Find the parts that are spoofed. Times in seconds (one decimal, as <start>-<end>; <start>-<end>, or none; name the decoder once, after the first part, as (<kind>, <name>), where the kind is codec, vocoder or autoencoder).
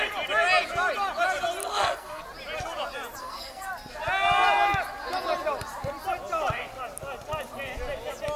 1.6-2.2 (codec, SNAC); 3.2-3.7